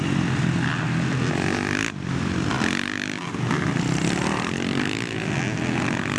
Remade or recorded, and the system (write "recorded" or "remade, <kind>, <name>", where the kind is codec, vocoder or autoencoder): recorded